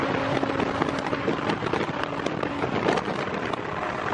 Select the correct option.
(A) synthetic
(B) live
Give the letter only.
A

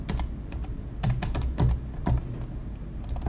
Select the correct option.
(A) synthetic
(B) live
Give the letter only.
B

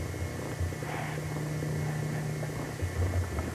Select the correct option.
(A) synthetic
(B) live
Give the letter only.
B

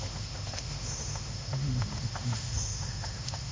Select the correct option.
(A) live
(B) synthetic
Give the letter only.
B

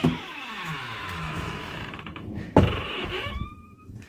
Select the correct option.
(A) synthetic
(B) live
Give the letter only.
A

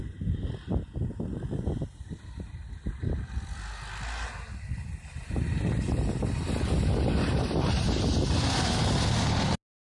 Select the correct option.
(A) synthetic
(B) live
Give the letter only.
B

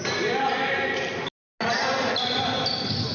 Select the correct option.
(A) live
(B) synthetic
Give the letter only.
A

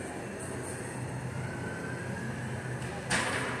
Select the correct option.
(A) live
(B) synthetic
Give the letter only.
A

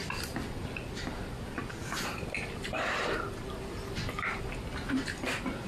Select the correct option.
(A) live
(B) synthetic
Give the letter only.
A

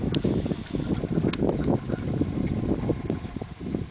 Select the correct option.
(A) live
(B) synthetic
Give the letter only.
A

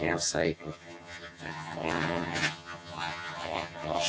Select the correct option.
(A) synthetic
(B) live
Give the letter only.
A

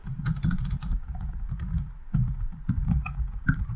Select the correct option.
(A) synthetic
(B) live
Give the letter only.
A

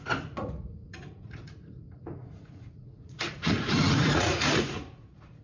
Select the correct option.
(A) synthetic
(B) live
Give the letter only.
A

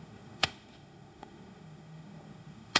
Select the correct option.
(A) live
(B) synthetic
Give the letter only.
B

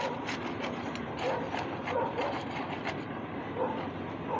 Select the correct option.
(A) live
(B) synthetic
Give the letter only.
A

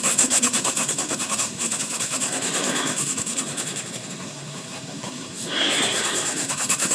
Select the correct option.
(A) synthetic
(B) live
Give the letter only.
A